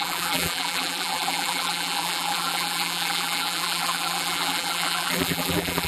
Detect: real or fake fake